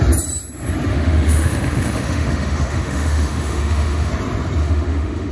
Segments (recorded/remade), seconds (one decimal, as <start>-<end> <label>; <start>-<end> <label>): 0.0-0.9 recorded; 0.9-4.1 remade; 4.1-4.6 recorded; 4.6-5.3 remade